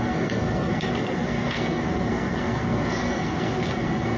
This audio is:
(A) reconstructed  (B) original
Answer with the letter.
A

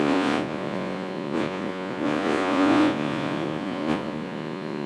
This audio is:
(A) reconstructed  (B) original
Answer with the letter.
A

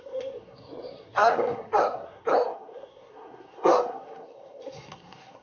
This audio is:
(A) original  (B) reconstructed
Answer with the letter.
B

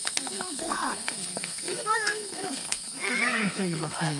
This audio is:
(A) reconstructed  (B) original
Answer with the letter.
A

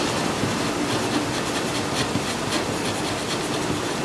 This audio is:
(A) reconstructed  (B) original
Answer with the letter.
B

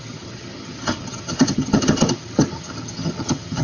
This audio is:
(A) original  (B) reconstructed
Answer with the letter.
B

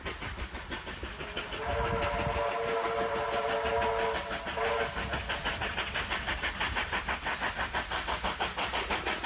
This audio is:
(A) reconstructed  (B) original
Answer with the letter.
B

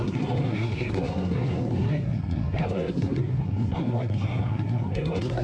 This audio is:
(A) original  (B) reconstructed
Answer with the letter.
B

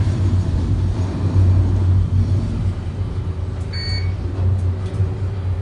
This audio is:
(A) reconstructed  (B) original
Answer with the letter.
B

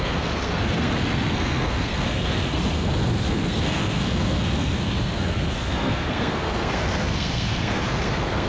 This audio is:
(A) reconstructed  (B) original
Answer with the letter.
A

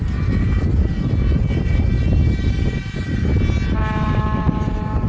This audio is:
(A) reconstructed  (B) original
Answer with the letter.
B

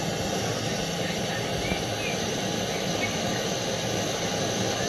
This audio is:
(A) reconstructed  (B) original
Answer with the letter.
B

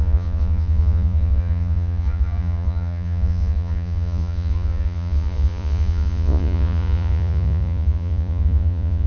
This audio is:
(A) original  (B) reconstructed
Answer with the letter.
B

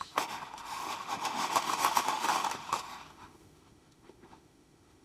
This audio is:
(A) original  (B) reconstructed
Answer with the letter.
B